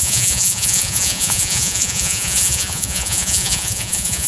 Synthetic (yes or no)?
yes